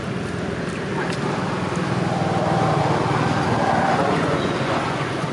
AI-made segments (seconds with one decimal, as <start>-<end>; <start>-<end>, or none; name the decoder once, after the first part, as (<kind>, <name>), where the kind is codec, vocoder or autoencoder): 4.0-5.3 (vocoder, Vocos)